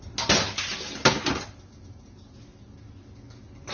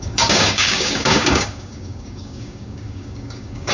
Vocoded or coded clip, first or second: second